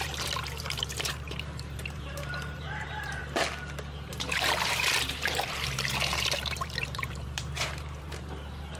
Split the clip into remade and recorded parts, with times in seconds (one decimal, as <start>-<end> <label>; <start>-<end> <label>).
0.0-3.2 remade; 3.2-4.1 recorded; 4.1-8.8 remade